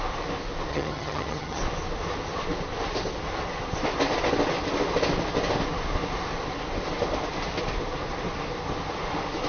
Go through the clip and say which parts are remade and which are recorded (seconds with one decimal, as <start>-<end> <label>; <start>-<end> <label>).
0.0-0.7 recorded; 0.7-1.6 remade; 1.6-9.5 recorded

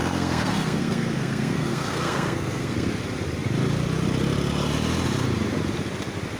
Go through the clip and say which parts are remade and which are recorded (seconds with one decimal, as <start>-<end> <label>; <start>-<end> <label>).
0.0-2.9 remade; 2.9-6.4 recorded

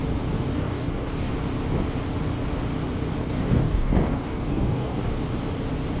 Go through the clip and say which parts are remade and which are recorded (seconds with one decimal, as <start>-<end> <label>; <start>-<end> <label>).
0.0-0.5 recorded; 0.5-1.3 remade; 1.3-3.2 recorded; 3.2-5.2 remade; 5.2-6.0 recorded

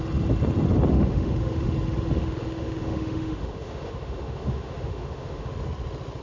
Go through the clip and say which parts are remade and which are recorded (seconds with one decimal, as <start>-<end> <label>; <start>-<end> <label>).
0.0-0.9 recorded; 0.9-1.7 remade; 1.7-2.2 recorded; 2.2-5.5 remade; 5.5-6.2 recorded

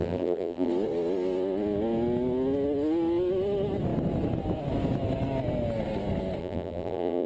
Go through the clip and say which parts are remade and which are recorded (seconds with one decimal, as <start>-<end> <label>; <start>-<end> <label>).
0.0-0.7 remade; 0.7-6.4 recorded; 6.4-7.3 remade